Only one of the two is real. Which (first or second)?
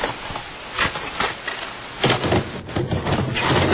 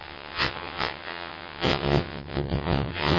first